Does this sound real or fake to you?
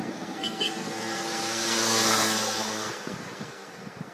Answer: fake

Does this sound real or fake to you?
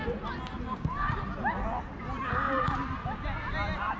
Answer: real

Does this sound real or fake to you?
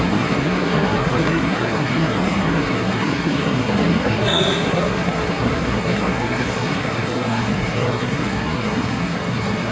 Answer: fake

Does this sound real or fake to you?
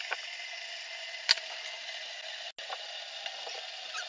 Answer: real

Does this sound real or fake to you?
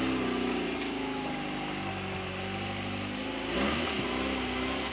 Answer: real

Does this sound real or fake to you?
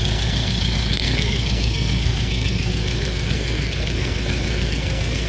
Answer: fake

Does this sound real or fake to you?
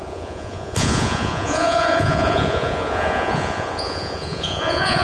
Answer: fake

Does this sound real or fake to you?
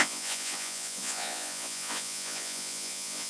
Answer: fake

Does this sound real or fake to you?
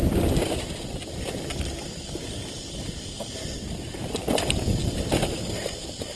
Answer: real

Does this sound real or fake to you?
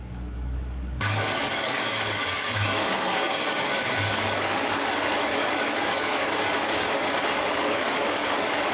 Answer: fake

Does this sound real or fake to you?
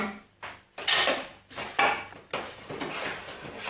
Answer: real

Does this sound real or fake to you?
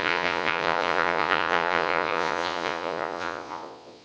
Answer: fake